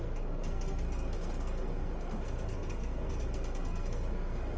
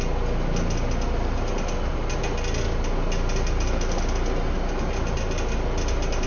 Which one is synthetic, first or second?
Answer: first